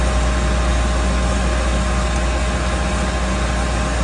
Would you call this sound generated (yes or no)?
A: no